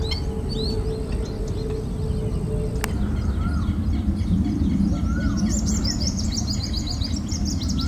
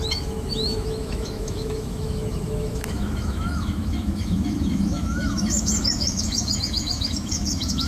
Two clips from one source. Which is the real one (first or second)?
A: first